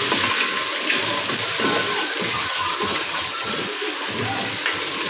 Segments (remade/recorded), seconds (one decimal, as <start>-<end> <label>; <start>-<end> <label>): 0.0-2.3 recorded; 2.3-3.6 remade; 3.6-5.1 recorded